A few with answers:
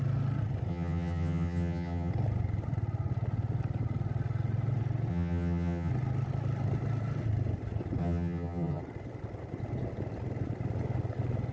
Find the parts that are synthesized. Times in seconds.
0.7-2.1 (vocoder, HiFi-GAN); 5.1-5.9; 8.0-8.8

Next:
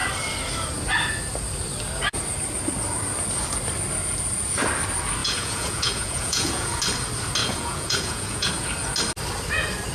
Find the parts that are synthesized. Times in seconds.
5.2-6.8 (vocoder, Vocos); 7.4-8.5

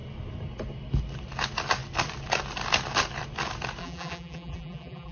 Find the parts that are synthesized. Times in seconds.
3.8-5.1 (vocoder, BigVGAN v2)

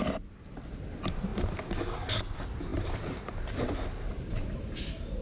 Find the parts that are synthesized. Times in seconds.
2.7-3.5 (vocoder, BigVGAN v2)